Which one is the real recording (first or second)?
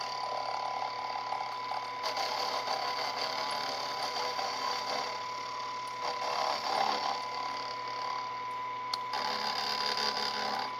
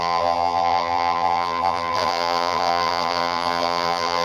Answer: first